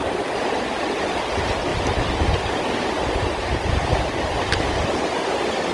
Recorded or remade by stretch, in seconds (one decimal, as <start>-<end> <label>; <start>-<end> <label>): 0.0-5.7 recorded